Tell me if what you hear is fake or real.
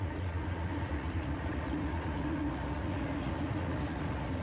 fake